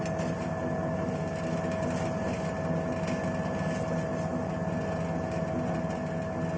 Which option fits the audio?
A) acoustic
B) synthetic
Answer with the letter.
A